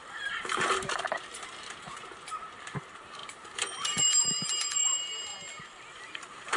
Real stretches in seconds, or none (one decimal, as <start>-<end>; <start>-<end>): 5.3-5.9